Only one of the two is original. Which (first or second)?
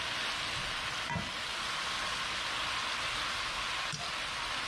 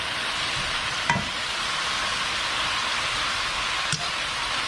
first